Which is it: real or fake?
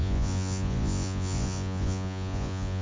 fake